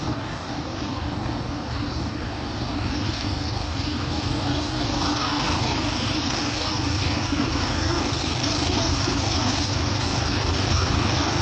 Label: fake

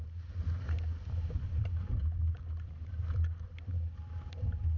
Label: real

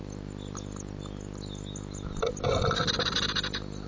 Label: real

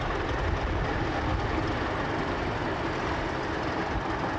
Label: real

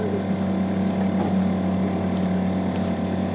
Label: real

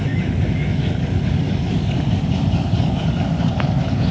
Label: fake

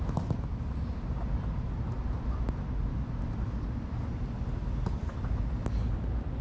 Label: real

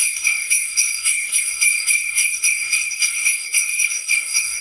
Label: fake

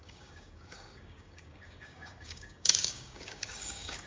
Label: fake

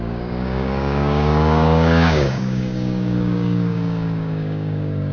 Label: fake